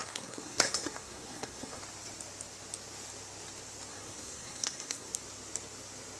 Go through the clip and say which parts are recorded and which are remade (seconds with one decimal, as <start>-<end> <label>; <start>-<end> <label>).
0.0-1.8 remade; 1.8-3.9 recorded; 3.9-5.1 remade; 5.1-6.2 recorded